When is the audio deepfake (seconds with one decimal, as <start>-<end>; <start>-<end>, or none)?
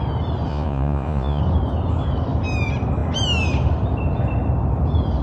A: 0.5-1.4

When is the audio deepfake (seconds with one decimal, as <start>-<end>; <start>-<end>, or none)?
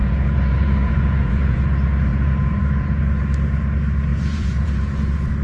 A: 0.0-1.6; 2.1-3.0; 4.1-4.9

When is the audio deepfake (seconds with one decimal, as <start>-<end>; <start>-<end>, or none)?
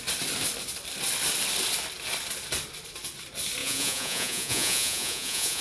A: 3.6-5.6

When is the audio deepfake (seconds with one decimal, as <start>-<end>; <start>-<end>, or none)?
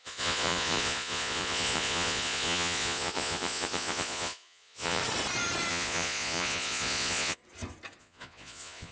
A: 0.0-5.0; 5.7-7.4; 8.0-8.9